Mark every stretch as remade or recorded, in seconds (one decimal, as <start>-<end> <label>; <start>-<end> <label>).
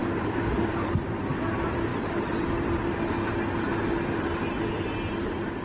0.0-5.6 recorded